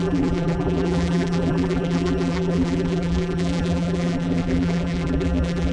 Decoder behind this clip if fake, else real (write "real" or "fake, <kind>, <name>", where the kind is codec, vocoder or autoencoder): fake, vocoder, BigVGAN v2